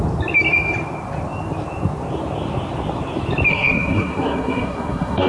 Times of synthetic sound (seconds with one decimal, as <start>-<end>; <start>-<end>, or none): 3.5-5.3